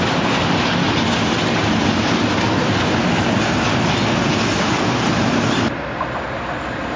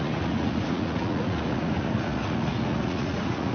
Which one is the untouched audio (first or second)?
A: first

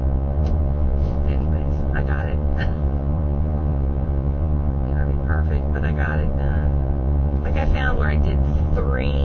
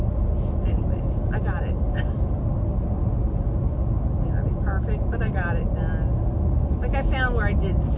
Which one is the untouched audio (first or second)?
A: second